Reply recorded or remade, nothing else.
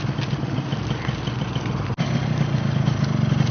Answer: recorded